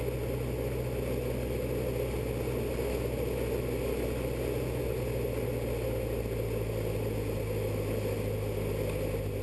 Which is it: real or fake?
real